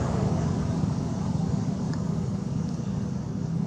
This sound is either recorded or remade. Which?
remade